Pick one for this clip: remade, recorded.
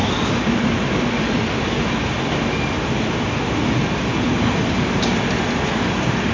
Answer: recorded